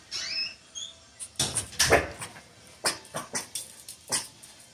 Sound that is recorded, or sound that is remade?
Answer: recorded